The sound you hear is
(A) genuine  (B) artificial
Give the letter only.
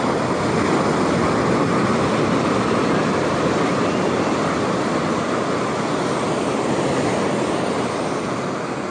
A